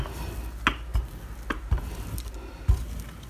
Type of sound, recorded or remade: recorded